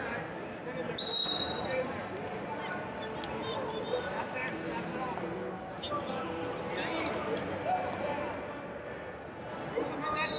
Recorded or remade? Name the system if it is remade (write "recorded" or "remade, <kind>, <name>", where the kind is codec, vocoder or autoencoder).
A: recorded